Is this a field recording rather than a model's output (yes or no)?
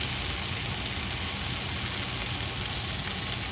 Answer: yes